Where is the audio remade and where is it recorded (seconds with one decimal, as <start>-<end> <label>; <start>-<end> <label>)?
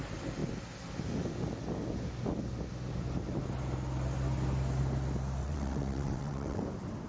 0.0-5.4 recorded; 5.4-6.6 remade; 6.6-7.1 recorded